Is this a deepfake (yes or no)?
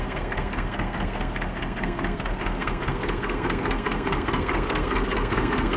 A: yes